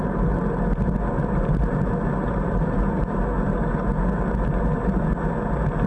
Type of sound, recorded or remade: recorded